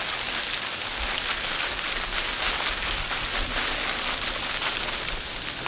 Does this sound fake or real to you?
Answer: real